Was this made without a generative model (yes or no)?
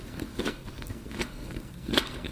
no